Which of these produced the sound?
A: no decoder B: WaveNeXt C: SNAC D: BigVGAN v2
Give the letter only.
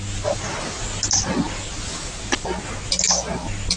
A